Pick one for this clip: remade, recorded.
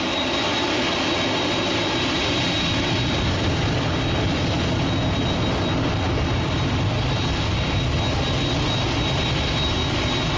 recorded